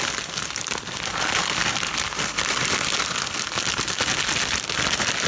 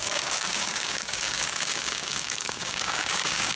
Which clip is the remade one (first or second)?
second